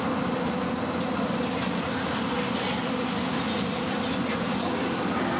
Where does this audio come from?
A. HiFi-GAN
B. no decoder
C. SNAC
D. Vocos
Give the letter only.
B